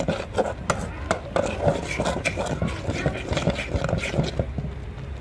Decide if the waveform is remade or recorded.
recorded